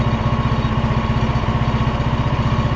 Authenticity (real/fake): real